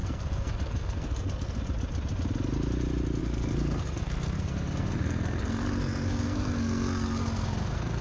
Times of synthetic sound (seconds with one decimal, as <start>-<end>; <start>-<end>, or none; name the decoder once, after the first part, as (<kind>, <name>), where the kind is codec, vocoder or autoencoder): 0.0-1.6 (codec, SNAC); 3.2-8.0